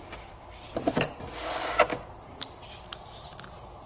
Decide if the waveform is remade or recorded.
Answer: recorded